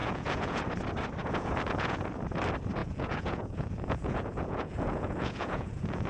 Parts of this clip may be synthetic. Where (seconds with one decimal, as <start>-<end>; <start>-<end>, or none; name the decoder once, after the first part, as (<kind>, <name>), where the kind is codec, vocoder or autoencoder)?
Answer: 0.0-0.6 (vocoder, Vocos); 1.2-2.2; 2.8-6.1